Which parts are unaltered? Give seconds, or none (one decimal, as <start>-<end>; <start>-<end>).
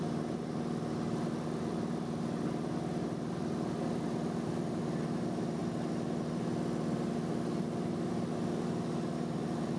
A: 0.0-9.8